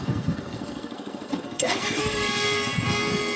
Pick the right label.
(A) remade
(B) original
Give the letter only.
A